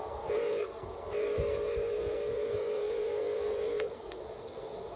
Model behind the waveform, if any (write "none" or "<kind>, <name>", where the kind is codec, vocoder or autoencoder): codec, SNAC